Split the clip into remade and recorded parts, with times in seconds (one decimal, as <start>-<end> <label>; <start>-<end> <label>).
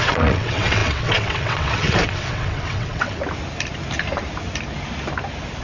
0.0-3.2 remade; 3.2-5.6 recorded